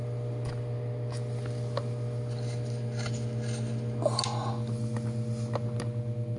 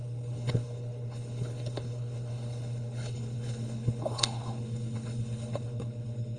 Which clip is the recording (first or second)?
first